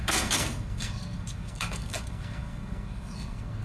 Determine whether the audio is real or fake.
fake